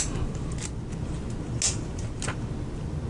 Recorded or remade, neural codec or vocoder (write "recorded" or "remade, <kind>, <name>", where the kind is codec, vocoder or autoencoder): recorded